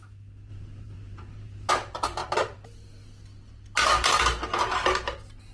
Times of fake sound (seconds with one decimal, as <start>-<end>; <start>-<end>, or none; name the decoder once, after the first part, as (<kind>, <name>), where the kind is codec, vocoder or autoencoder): 0.5-1.7 (vocoder, BigVGAN v2); 2.2-2.7; 4.5-5.0